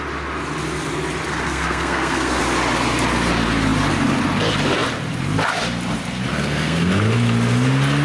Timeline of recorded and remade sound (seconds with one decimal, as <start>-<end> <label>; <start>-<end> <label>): 0.0-1.3 recorded; 1.3-2.4 remade; 2.4-6.3 recorded; 6.3-6.9 remade; 6.9-8.0 recorded